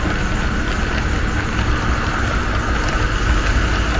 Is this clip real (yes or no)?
yes